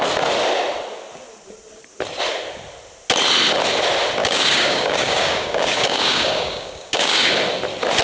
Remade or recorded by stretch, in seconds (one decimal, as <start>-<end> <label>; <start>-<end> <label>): 0.0-4.2 recorded; 4.2-7.3 remade; 7.3-8.0 recorded